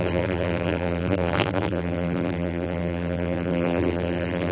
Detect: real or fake fake